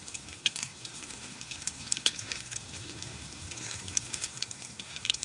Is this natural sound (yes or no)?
no